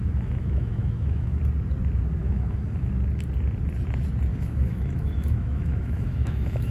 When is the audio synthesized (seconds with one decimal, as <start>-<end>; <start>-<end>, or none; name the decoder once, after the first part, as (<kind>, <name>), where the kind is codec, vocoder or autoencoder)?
0.0-1.4 (autoencoder, DAC-VAE); 2.2-2.9; 4.3-6.7